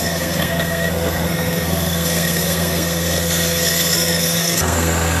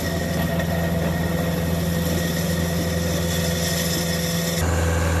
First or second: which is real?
second